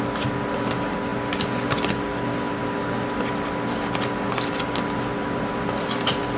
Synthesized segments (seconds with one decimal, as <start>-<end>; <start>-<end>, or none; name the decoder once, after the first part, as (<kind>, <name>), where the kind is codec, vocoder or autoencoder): none